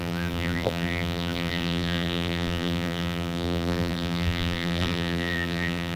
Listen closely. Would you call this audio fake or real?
fake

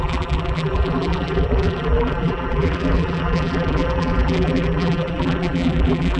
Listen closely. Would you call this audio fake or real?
fake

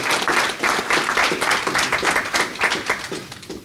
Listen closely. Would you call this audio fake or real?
real